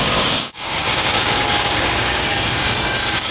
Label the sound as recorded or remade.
remade